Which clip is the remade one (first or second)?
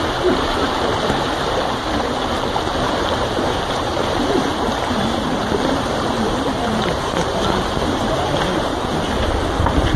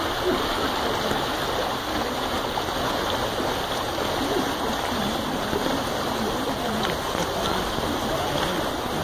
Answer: first